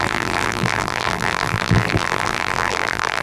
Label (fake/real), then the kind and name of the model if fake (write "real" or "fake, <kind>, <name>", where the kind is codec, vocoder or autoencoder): fake, vocoder, BigVGAN v2